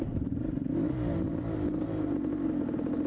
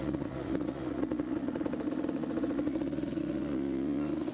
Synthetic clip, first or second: second